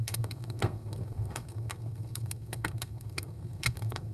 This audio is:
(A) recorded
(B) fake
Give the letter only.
B